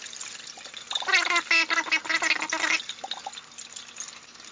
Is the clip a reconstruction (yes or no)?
no